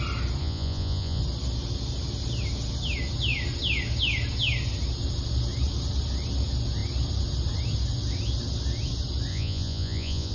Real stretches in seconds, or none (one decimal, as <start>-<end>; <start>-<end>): 0.0-0.4; 1.2-9.3

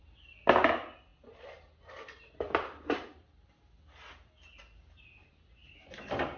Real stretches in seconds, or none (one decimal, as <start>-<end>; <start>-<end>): 0.0-1.1; 3.9-5.6

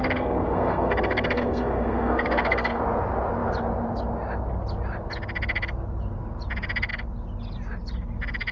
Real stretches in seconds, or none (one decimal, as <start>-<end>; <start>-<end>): 2.8-8.5